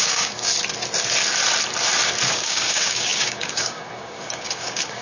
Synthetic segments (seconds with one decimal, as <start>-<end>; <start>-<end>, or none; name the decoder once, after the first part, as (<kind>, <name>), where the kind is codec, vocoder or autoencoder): 0.0-0.5 (codec, DAC); 2.3-5.0